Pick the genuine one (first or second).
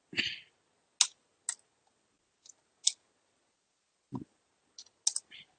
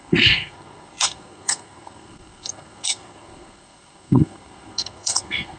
first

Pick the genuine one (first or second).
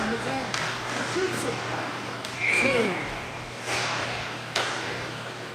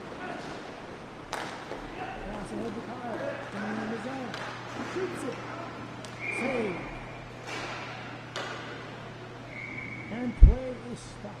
second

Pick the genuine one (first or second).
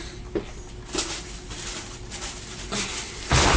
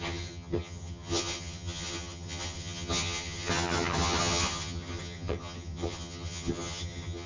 first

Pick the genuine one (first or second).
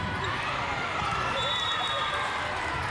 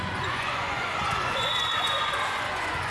first